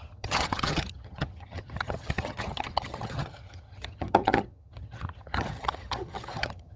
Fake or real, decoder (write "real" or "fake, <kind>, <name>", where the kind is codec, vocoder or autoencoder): fake, vocoder, HiFi-GAN